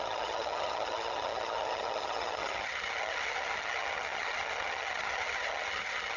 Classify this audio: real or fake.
fake